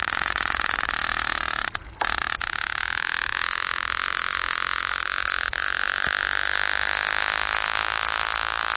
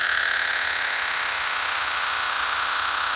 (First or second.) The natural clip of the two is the first